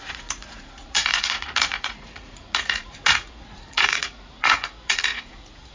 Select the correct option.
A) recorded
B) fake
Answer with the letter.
B